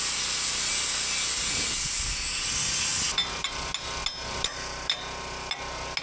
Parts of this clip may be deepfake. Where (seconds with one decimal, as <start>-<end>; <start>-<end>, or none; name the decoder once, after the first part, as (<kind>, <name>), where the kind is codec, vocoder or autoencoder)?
none